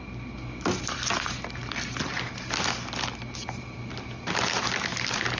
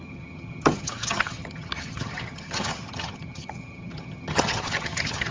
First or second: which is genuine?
first